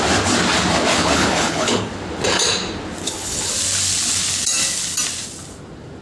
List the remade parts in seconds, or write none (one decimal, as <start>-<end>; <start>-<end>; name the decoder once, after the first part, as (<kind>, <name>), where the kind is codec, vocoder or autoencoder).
0.9-1.9 (codec, HILCodec); 3.0-3.5